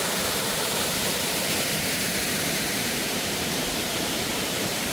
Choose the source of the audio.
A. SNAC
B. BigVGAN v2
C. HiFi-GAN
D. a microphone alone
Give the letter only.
B